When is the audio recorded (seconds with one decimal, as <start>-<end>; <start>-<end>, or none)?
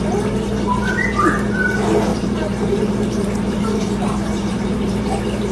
0.0-2.1; 5.0-5.5